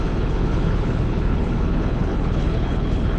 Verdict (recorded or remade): remade